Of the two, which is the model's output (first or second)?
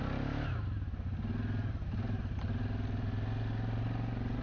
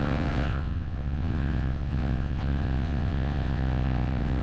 second